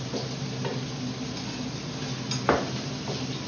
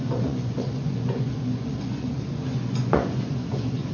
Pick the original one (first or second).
first